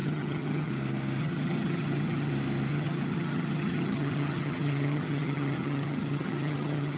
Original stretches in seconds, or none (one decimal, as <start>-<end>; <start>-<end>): 0.7-1.2; 2.3-2.7